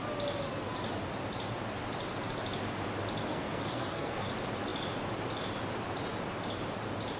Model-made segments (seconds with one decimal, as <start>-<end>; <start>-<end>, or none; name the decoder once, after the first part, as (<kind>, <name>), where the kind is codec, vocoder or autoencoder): 3.3-4.3 (codec, SNAC)